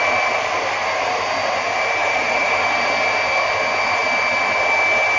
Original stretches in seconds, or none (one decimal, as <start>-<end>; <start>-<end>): 0.0-2.0; 2.9-5.2